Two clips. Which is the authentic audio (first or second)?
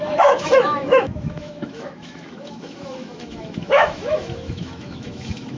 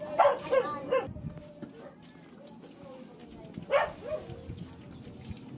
second